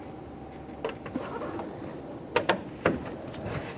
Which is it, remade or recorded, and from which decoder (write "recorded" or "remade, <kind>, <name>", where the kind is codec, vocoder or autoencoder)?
recorded